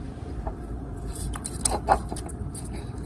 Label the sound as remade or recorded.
remade